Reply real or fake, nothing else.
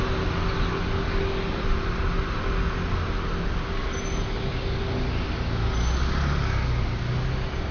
real